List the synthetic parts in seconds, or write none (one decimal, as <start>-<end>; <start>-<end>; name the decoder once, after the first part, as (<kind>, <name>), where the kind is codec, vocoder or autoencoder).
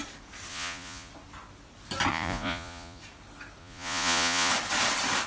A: 0.5-1.1 (vocoder, Vocos); 2.1-3.0; 3.6-4.5